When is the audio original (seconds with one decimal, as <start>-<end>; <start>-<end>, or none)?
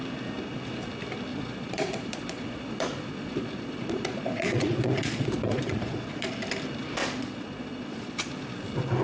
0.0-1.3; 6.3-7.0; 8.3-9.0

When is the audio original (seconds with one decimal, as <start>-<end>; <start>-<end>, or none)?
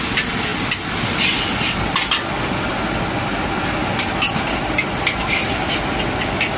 0.0-6.6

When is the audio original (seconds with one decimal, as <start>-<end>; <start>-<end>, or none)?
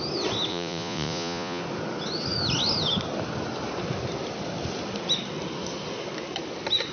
0.0-0.5; 1.6-6.9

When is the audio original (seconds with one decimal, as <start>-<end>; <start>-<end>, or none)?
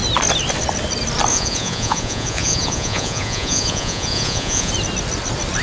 0.0-1.3; 4.7-5.6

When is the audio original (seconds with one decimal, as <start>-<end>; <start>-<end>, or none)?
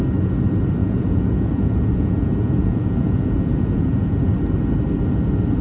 0.0-0.8; 4.2-5.6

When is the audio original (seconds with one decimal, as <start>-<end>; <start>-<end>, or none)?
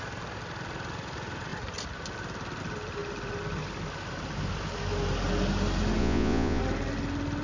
0.0-6.0; 6.6-7.4